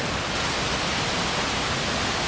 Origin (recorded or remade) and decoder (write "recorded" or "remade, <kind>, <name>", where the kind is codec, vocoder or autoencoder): recorded